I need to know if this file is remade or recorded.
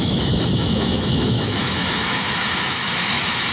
remade